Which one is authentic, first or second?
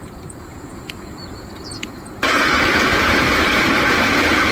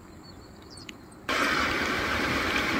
second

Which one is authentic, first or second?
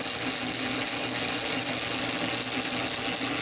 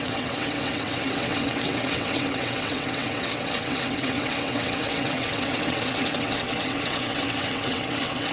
first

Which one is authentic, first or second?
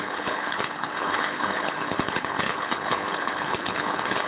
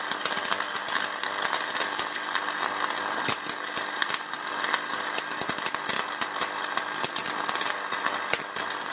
second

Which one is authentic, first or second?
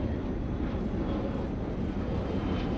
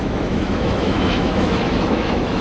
first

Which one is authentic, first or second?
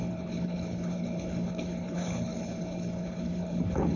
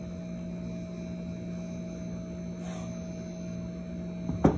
second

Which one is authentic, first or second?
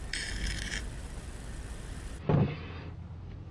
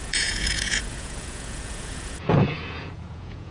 first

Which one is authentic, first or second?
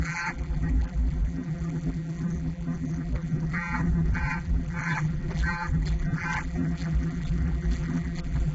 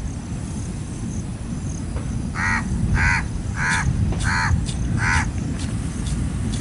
second